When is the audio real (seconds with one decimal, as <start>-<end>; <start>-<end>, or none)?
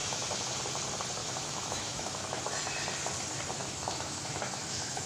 0.5-1.2; 2.4-3.6